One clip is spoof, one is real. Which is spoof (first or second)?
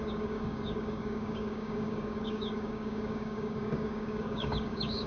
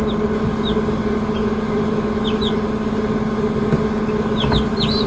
first